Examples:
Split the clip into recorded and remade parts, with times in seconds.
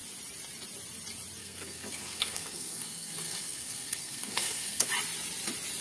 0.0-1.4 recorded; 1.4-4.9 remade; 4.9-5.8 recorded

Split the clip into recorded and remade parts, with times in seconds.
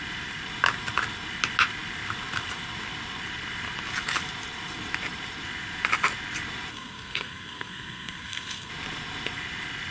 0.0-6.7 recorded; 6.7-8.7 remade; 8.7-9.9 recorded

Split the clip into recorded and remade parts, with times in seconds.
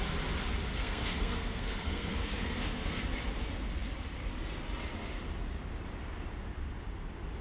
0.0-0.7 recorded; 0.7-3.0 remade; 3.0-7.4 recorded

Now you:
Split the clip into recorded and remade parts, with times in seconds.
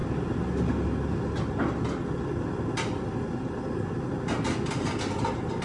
0.0-5.6 recorded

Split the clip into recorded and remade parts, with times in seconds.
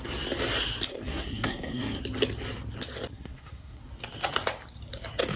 0.0-0.9 recorded; 0.9-2.0 remade; 2.0-3.1 recorded; 3.1-3.8 remade; 3.8-5.4 recorded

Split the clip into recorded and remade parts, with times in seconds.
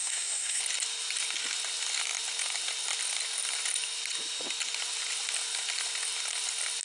0.0-0.6 remade; 0.6-6.8 recorded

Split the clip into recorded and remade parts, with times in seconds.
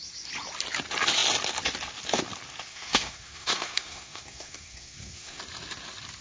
0.0-2.7 recorded; 2.7-5.4 remade; 5.4-6.2 recorded